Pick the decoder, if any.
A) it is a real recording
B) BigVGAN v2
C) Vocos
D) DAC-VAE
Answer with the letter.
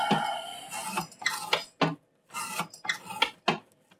A